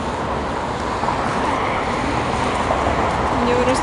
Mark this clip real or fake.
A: real